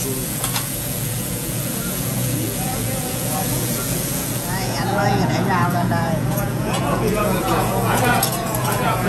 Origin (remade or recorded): remade